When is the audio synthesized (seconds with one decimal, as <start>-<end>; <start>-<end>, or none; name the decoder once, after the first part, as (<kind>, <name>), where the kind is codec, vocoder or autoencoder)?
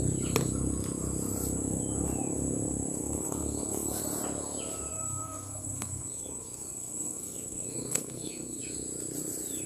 3.0-4.0 (codec, SNAC); 4.9-8.6